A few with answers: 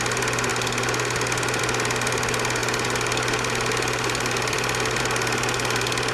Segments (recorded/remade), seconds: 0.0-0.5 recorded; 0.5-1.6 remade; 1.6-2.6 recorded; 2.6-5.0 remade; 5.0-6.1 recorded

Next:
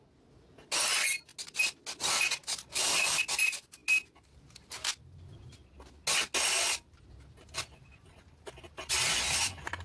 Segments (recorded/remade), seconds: 0.0-9.8 recorded

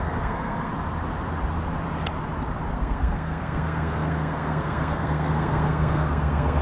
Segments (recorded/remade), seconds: 0.0-0.7 remade; 0.7-2.7 recorded; 2.7-6.6 remade